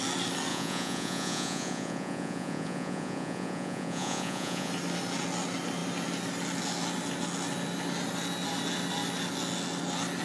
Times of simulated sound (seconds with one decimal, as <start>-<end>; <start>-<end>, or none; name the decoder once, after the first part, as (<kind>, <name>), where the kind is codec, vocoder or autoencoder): 0.5-4.7 (vocoder, Vocos)